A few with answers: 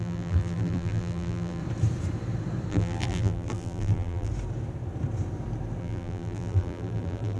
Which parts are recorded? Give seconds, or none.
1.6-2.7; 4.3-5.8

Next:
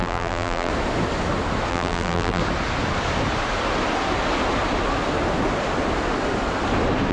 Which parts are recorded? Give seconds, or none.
0.7-1.7; 2.4-7.1